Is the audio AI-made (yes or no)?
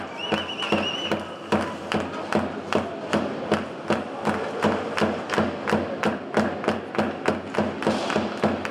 no